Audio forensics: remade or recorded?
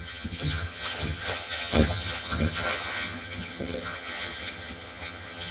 remade